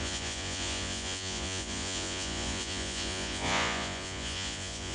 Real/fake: fake